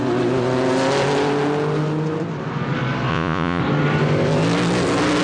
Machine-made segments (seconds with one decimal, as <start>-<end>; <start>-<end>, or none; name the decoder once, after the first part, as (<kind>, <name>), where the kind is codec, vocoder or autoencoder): 3.1-3.6 (vocoder, Vocos)